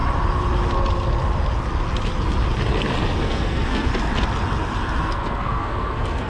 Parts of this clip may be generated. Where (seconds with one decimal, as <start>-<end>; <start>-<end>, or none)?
3.2-3.9; 5.0-6.3